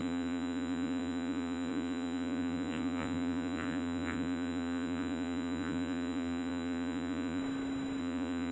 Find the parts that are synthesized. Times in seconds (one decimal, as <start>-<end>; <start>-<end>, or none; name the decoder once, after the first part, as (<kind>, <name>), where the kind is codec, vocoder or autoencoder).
0.0-7.4 (vocoder, Vocos); 8.0-8.5